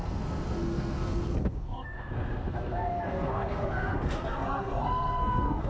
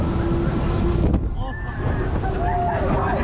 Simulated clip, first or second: first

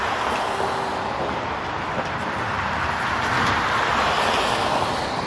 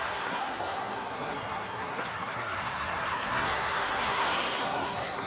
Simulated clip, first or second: second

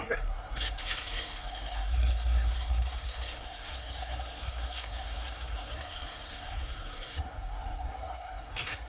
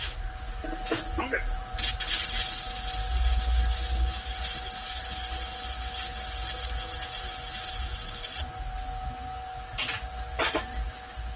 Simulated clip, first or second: first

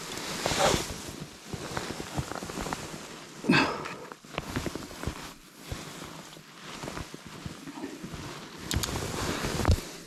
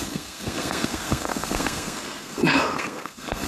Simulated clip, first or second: second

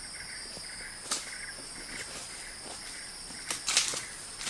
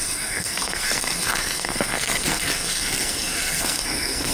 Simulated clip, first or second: second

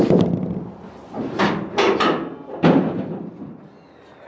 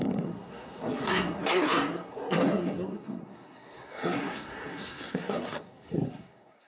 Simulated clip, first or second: second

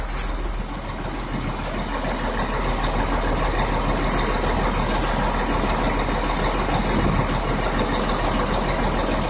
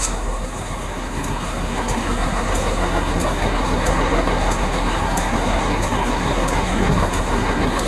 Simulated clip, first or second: second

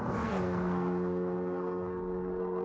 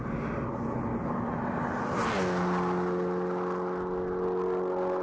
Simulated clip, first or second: first